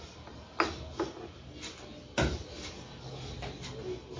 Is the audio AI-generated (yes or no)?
no